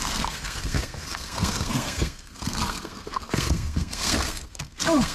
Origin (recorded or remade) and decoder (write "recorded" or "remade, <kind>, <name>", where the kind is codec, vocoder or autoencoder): remade, codec, SNAC